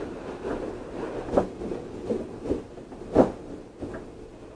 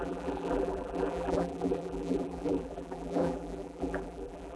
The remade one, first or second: second